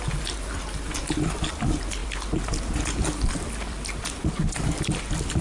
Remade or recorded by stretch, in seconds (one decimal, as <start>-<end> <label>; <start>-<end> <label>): 0.0-5.4 recorded